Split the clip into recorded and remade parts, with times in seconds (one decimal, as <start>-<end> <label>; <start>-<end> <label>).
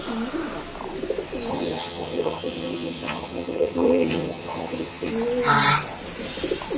0.0-1.5 recorded; 1.5-5.1 remade; 5.1-6.8 recorded